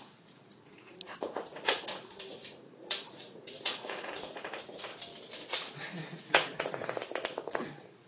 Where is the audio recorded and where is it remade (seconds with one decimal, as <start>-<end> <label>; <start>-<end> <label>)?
0.0-4.9 remade; 4.9-5.5 recorded; 5.5-8.1 remade